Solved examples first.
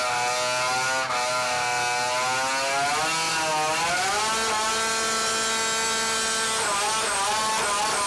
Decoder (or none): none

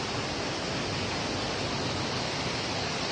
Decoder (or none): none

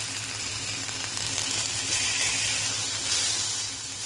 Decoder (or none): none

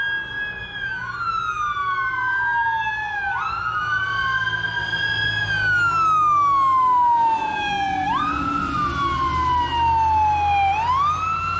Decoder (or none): none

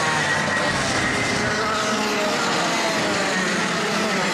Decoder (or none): none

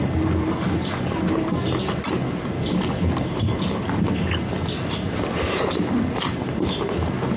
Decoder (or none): none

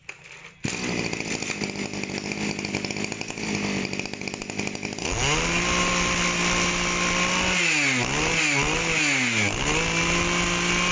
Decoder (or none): none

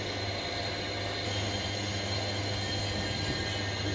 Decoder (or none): none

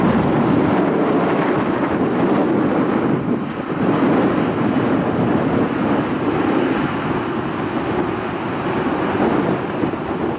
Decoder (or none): none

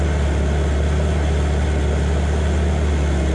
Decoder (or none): none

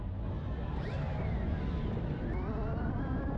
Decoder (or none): none